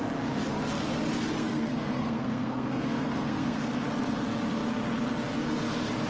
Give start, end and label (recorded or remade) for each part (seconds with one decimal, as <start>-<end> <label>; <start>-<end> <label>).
0.0-1.4 recorded; 1.4-3.6 remade; 3.6-6.1 recorded